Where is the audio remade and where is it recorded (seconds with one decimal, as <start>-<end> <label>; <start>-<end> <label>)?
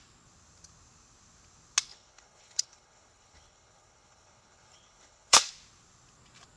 0.0-1.9 recorded; 1.9-5.5 remade; 5.5-6.6 recorded